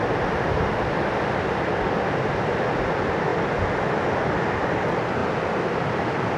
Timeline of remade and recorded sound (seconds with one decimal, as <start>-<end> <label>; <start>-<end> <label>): 0.0-6.4 recorded